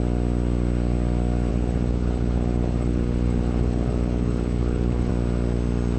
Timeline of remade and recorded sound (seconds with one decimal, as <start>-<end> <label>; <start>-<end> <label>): 0.0-1.5 recorded; 1.5-5.1 remade; 5.1-6.0 recorded

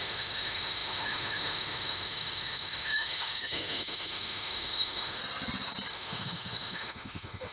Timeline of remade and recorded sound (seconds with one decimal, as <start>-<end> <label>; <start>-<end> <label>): 0.0-5.2 remade; 5.2-5.9 recorded; 5.9-7.5 remade

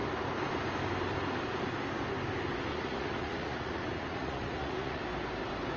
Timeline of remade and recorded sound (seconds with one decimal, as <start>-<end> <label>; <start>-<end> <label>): 0.0-2.7 recorded; 2.7-5.0 remade; 5.0-5.8 recorded

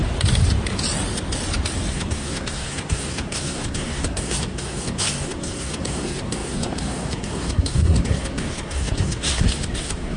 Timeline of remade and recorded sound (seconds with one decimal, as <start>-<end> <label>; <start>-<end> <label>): 0.0-1.9 recorded; 1.9-10.2 remade

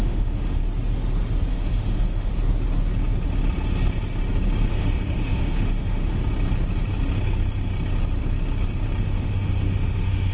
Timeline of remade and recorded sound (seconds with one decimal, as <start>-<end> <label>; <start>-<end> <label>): 0.0-0.6 remade; 0.6-1.5 recorded; 1.5-2.3 remade; 2.3-4.7 recorded; 4.7-6.0 remade; 6.0-9.0 recorded; 9.0-10.3 remade

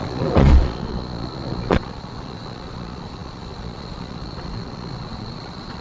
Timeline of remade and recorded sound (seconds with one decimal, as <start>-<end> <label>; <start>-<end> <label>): 0.0-5.8 remade